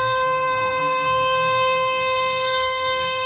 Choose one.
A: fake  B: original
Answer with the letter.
A